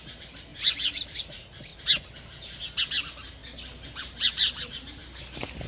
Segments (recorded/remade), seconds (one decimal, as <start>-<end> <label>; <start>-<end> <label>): 0.0-1.7 remade; 1.7-2.8 recorded; 2.8-3.4 remade; 3.4-4.0 recorded; 4.0-5.0 remade; 5.0-5.7 recorded